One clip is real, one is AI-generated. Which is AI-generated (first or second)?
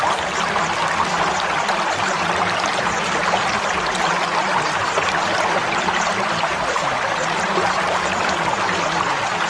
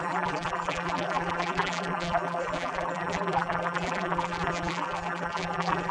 second